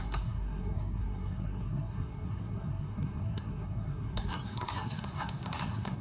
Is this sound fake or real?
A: fake